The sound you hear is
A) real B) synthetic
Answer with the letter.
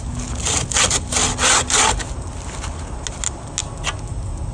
A